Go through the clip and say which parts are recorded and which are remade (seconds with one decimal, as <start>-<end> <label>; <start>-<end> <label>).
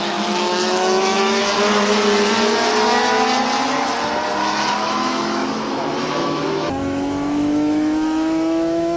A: 0.0-1.4 remade; 1.4-4.7 recorded; 4.7-9.0 remade